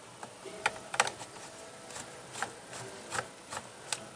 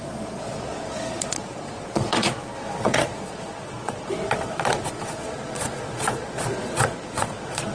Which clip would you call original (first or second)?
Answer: first